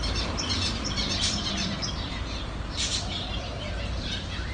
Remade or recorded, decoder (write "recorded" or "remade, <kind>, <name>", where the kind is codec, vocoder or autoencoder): remade, vocoder, BigVGAN v2